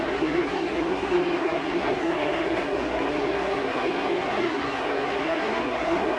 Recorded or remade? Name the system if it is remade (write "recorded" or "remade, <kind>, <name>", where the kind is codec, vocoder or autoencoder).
remade, codec, SNAC